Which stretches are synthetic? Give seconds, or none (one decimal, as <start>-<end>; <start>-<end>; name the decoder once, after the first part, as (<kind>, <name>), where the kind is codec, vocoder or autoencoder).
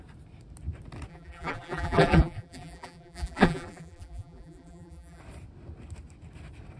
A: 1.1-5.2 (vocoder, BigVGAN v2)